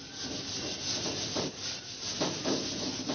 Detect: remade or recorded recorded